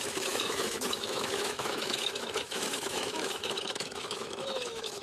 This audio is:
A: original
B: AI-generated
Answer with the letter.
B